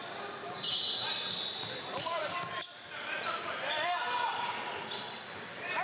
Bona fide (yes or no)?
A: yes